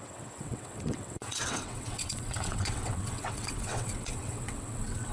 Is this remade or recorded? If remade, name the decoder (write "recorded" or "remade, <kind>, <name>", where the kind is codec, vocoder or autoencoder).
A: remade, vocoder, WaveNeXt